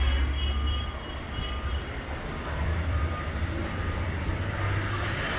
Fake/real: real